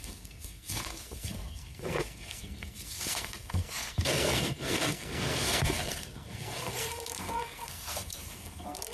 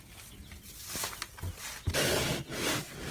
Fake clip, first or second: first